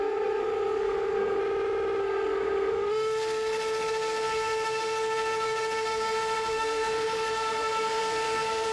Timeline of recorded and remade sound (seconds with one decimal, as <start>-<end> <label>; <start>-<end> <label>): 0.0-1.4 remade; 1.4-2.0 recorded; 2.0-8.7 remade